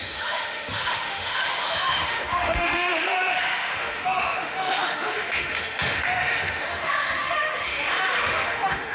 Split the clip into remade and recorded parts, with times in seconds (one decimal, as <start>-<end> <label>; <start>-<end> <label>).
0.0-8.9 remade